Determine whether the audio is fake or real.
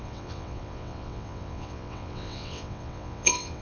fake